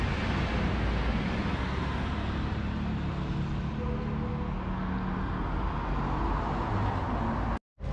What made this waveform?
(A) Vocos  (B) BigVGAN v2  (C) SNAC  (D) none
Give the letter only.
D